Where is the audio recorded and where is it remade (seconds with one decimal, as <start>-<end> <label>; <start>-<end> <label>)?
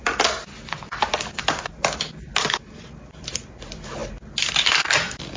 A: 0.0-5.4 recorded